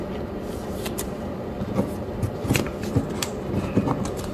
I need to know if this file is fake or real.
real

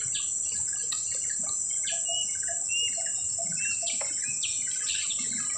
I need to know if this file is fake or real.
real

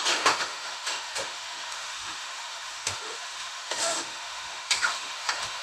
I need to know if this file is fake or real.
fake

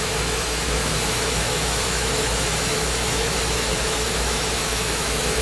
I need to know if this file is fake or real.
fake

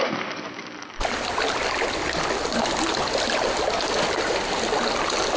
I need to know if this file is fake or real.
real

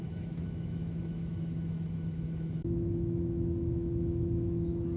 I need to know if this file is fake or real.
fake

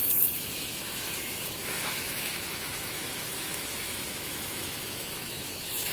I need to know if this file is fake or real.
fake